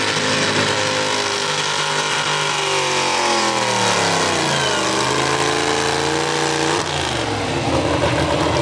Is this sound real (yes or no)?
yes